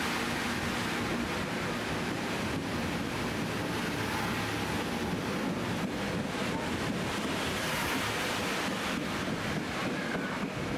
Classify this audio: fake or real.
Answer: real